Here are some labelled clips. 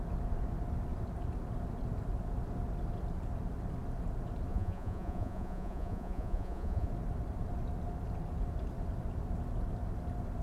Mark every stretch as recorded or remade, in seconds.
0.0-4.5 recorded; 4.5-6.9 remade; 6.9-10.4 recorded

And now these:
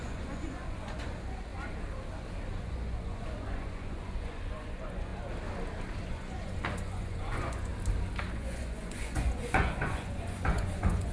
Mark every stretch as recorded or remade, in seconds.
0.0-1.5 remade; 1.5-2.6 recorded; 2.6-5.1 remade; 5.1-6.1 recorded; 6.1-7.7 remade; 7.7-8.3 recorded; 8.3-11.1 remade

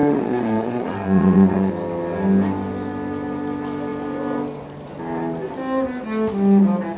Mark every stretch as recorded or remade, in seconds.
0.0-1.7 remade; 1.7-7.0 recorded

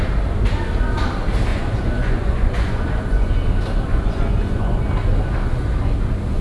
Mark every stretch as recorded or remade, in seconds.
0.0-1.5 recorded; 1.5-3.3 remade; 3.3-3.9 recorded; 3.9-4.8 remade; 4.8-6.4 recorded